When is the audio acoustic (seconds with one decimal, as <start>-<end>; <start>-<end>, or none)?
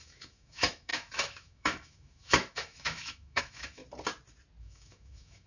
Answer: 3.8-4.6